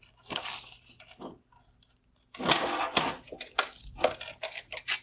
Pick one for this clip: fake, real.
real